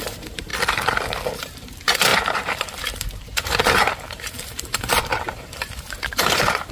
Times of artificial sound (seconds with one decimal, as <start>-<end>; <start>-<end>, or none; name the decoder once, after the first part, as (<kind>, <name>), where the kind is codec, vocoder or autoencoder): 0.0-0.5 (vocoder, BigVGAN v2); 1.3-6.7